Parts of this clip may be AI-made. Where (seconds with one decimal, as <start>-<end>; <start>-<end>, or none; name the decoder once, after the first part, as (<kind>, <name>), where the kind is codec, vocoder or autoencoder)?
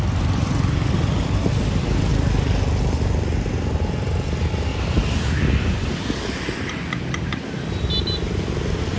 none